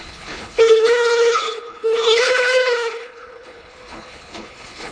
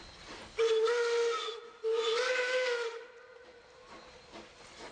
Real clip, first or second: second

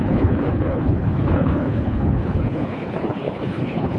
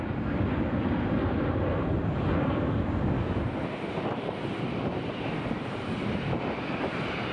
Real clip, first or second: second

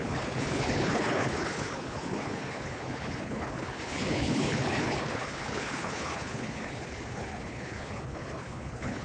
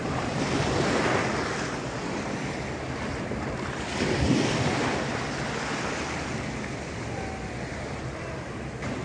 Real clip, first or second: second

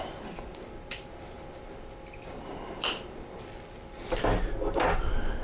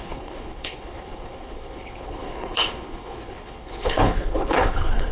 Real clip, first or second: first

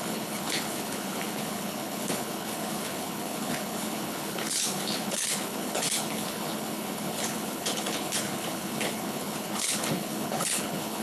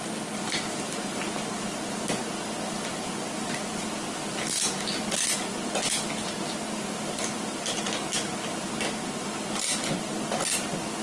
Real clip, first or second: second